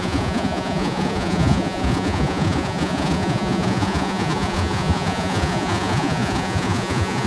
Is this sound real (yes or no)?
no